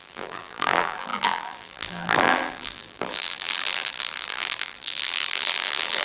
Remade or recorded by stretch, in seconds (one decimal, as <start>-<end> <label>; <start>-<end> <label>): 0.0-6.0 remade